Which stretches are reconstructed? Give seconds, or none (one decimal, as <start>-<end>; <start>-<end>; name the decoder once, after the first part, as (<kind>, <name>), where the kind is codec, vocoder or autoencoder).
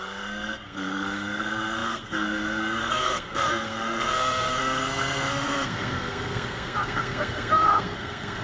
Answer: 0.0-8.4 (codec, SNAC)